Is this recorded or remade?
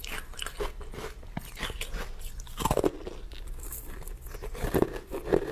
recorded